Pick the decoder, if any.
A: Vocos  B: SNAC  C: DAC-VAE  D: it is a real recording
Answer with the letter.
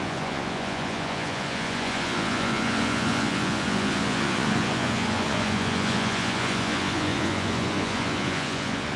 A